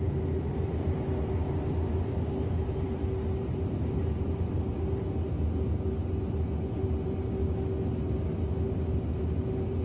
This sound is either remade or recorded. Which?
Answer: recorded